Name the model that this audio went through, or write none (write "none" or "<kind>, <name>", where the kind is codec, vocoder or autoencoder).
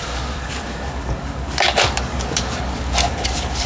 codec, DAC